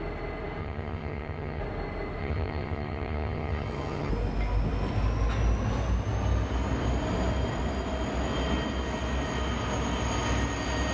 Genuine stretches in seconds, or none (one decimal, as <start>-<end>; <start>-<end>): 0.0-0.6; 1.6-2.2; 4.1-10.9